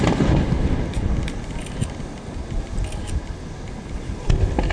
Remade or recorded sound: recorded